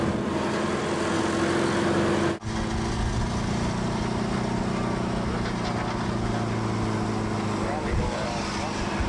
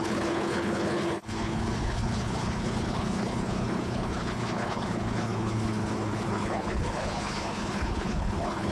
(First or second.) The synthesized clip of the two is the second